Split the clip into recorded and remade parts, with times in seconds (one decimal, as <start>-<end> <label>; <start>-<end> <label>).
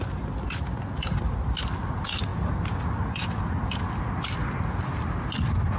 0.0-5.8 recorded